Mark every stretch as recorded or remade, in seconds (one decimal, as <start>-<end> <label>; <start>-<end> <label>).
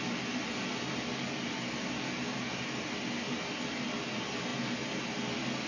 0.0-5.7 recorded